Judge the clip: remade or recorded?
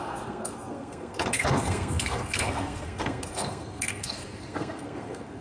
remade